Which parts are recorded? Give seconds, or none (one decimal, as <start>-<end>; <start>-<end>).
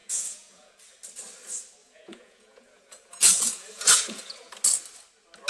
0.8-1.8; 4.5-5.5